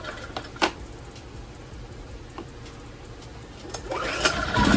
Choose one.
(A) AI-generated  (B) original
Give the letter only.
A